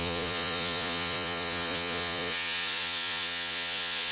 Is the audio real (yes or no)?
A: no